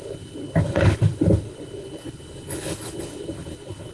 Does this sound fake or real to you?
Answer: fake